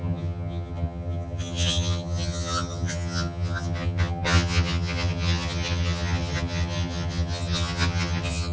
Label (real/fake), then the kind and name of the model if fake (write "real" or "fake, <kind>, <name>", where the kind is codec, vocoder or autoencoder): fake, vocoder, HiFi-GAN